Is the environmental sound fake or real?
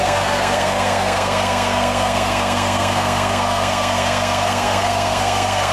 fake